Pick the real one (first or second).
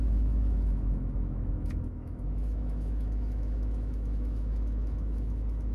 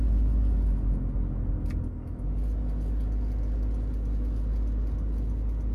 second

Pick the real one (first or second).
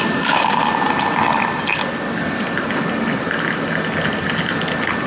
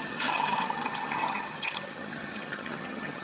first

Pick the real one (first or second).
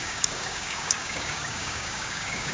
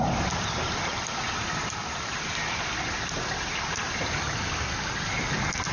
second